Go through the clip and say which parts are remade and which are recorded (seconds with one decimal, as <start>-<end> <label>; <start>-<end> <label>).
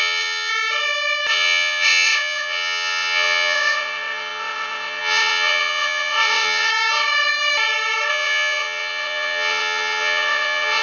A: 0.0-0.5 remade; 0.5-1.3 recorded; 1.3-6.7 remade; 6.7-8.1 recorded; 8.1-10.8 remade